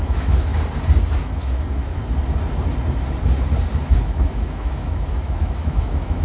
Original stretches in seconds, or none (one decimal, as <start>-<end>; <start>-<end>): 0.5-1.2; 2.0-3.8

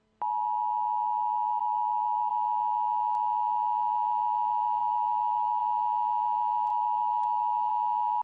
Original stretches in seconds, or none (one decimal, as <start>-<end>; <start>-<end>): 0.0-1.6; 2.3-4.8; 5.6-6.7; 7.7-8.2

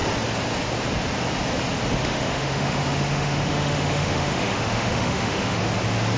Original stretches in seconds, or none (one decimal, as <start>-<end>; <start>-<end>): 0.0-2.0; 5.6-6.2